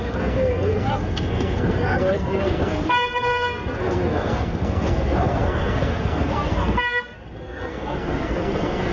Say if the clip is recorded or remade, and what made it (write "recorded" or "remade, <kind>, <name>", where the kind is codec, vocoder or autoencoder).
remade, codec, SNAC